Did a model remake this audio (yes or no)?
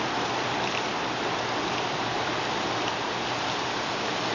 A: no